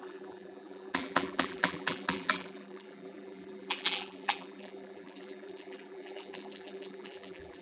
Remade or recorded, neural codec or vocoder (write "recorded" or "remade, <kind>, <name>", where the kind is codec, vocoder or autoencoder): remade, vocoder, BigVGAN v2